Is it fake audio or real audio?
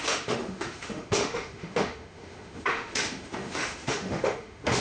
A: fake